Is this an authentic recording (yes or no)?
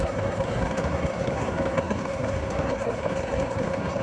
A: no